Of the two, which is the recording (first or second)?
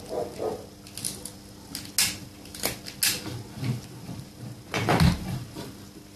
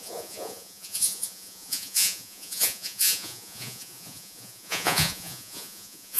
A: first